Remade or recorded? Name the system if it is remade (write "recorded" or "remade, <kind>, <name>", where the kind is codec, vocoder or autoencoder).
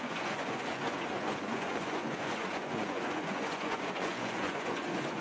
remade, vocoder, Vocos